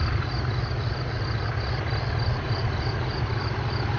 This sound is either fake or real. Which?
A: real